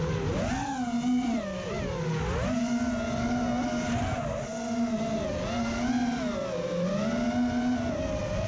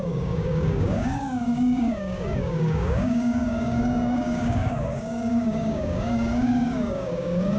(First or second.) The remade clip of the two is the second